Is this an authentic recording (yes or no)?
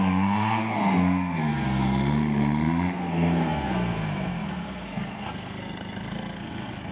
no